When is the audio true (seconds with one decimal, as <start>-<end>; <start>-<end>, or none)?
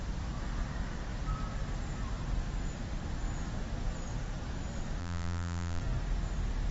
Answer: 0.0-5.0; 5.8-6.7